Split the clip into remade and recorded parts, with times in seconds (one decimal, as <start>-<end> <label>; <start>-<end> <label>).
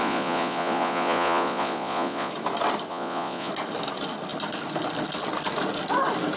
0.0-2.3 remade; 2.3-2.9 recorded; 2.9-3.5 remade; 3.5-6.4 recorded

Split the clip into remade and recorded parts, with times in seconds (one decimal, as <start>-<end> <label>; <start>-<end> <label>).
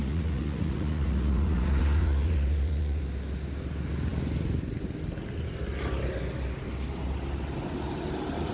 0.0-3.0 remade; 3.0-8.5 recorded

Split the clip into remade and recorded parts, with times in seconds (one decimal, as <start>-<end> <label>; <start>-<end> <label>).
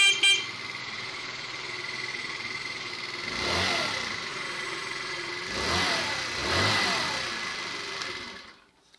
0.0-0.8 recorded; 0.8-2.9 remade; 2.9-4.3 recorded; 4.3-5.3 remade; 5.3-9.0 recorded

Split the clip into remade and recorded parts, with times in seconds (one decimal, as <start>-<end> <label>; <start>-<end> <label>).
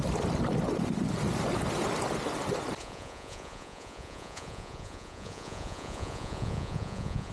0.0-2.8 recorded; 2.8-7.3 remade